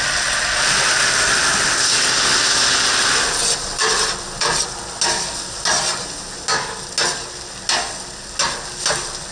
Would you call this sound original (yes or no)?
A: yes